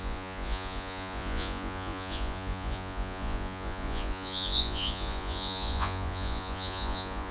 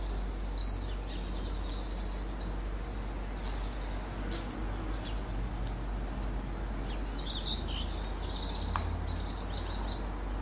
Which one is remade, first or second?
first